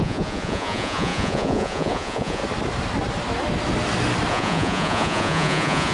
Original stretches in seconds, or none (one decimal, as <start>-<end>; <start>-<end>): 2.4-4.3